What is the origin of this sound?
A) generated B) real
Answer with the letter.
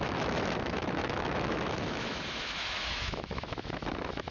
A